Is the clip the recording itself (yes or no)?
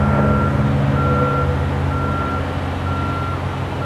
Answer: yes